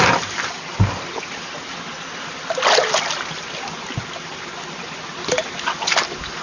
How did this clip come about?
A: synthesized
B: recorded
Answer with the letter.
B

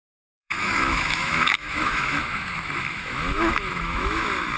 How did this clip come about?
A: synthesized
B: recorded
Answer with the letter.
A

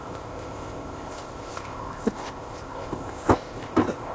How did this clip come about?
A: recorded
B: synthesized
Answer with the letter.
B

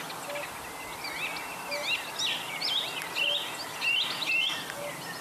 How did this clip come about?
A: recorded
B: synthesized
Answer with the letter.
A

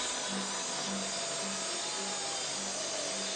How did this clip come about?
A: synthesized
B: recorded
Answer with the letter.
B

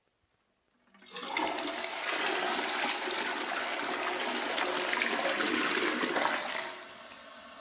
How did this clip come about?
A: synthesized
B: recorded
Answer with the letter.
B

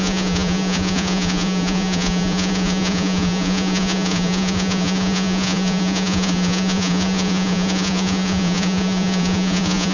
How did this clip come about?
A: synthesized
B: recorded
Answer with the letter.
A